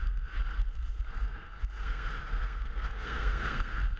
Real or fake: fake